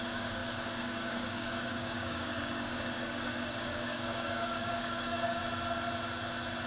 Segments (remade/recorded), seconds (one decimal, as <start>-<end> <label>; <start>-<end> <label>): 0.0-5.4 remade; 5.4-6.7 recorded